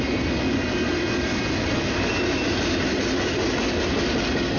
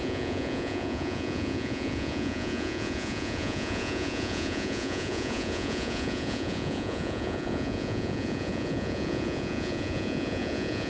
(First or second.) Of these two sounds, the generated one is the second